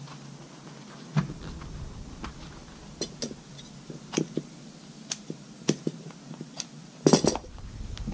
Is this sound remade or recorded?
recorded